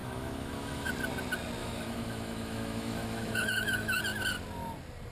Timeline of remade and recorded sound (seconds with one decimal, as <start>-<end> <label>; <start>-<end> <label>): 0.0-0.9 remade; 0.9-1.6 recorded; 1.6-4.0 remade; 4.0-5.1 recorded